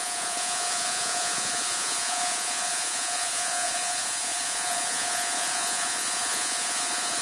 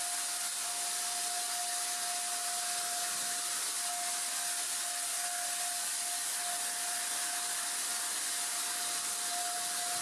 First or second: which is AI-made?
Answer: first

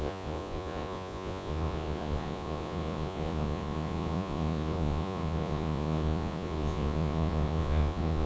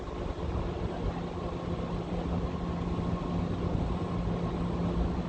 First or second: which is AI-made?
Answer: first